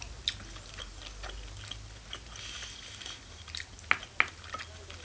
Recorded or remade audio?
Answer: recorded